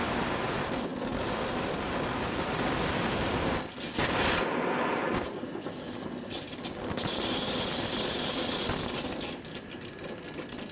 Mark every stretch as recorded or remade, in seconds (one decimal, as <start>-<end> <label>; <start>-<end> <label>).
0.0-10.7 recorded